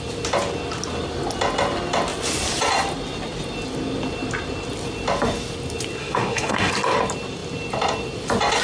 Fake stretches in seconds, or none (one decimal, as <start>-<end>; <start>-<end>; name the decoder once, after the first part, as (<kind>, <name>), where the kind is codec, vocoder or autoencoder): 6.0-6.7 (autoencoder, DAC-VAE)